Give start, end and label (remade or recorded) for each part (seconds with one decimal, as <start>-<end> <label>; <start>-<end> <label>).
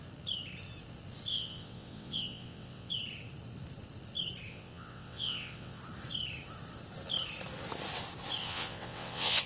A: 0.0-1.3 recorded; 1.3-2.9 remade; 2.9-4.5 recorded; 4.5-5.8 remade; 5.8-8.4 recorded; 8.4-9.5 remade